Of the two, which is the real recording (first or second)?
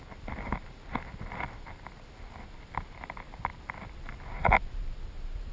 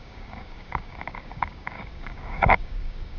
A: first